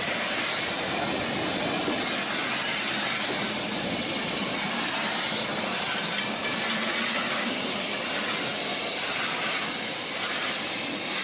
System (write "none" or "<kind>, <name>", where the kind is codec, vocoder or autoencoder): none